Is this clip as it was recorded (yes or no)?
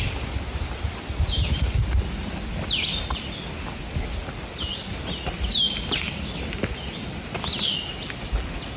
yes